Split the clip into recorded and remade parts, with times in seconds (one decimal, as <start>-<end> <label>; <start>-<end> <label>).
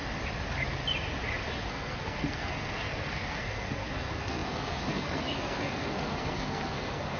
0.0-1.7 recorded; 1.7-7.2 remade